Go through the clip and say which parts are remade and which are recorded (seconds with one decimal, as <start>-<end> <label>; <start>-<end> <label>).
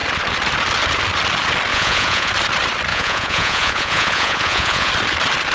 0.0-1.7 recorded; 1.7-2.3 remade; 2.3-2.9 recorded; 2.9-4.9 remade; 4.9-5.5 recorded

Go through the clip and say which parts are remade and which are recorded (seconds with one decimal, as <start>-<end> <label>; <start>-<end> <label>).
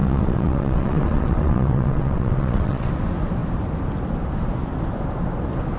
0.0-2.9 remade; 2.9-5.8 recorded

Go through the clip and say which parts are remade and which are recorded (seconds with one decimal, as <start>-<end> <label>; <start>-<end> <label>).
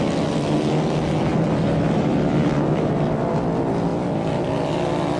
0.0-5.2 recorded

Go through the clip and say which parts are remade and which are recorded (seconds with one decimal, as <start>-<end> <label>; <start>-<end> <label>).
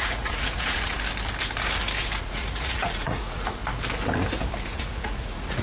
0.0-0.9 remade; 0.9-2.2 recorded; 2.2-3.6 remade; 3.6-4.6 recorded; 4.6-5.6 remade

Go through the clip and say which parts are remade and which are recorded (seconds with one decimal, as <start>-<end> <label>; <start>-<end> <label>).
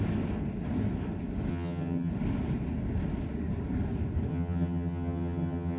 0.0-1.5 recorded; 1.5-2.1 remade; 2.1-4.3 recorded; 4.3-5.8 remade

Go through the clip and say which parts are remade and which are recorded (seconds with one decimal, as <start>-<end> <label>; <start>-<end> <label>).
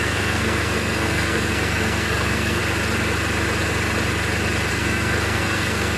0.0-2.6 remade; 2.6-4.7 recorded; 4.7-6.0 remade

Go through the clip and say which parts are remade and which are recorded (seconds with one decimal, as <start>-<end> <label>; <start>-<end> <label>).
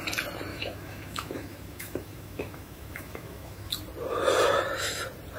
0.0-0.5 recorded; 0.5-3.7 remade; 3.7-5.4 recorded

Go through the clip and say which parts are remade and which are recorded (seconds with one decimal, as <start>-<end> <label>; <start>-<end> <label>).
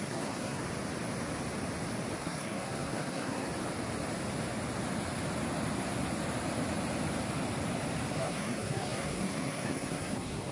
0.0-0.6 remade; 0.6-2.2 recorded; 2.2-3.5 remade; 3.5-8.1 recorded; 8.1-10.5 remade